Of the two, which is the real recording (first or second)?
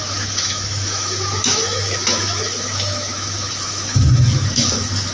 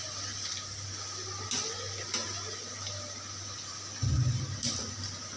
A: second